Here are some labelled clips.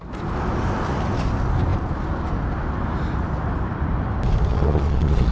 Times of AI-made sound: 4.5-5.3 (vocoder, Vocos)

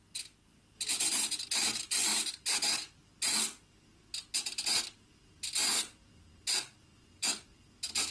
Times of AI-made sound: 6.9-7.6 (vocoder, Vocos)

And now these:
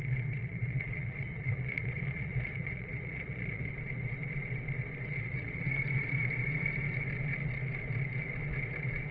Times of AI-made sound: 0.4-3.7 (vocoder, Vocos); 5.2-5.7